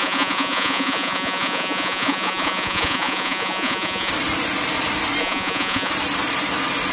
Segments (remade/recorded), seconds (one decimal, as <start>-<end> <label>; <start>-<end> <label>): 0.0-4.1 remade; 4.1-5.2 recorded; 5.2-5.9 remade; 5.9-6.9 recorded